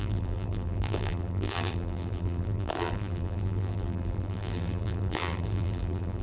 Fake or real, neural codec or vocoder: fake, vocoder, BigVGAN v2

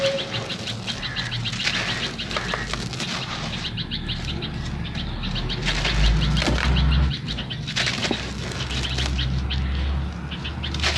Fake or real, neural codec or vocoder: real